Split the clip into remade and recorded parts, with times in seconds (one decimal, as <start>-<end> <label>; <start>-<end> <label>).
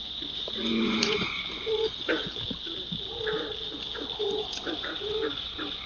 0.0-2.2 remade; 2.2-4.2 recorded; 4.2-5.9 remade